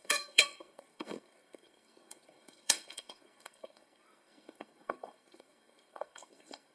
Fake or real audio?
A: fake